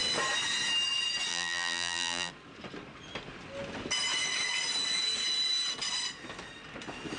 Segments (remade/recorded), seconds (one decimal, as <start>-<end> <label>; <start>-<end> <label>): 0.0-1.3 recorded; 1.3-2.3 remade; 2.3-7.2 recorded